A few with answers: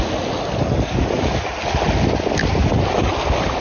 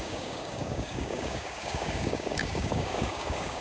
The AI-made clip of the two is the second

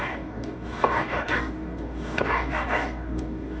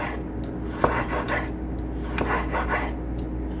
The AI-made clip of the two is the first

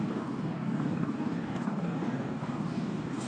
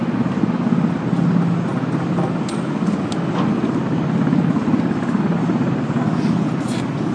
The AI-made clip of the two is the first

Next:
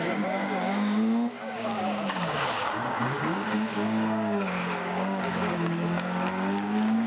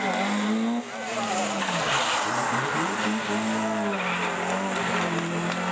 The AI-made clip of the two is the first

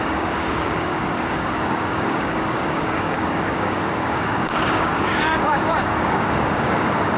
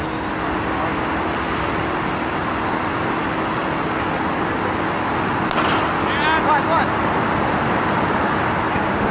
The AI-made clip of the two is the first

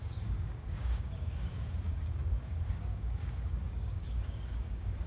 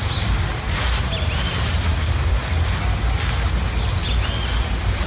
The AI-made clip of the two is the first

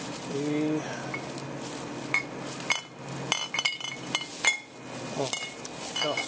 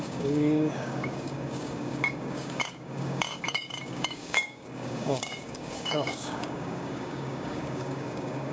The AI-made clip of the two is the second